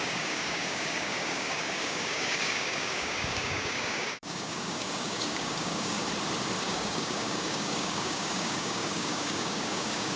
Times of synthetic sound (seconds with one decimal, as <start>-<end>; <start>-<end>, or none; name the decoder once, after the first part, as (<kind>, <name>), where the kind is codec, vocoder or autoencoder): 0.0-6.0 (codec, DAC); 6.6-10.2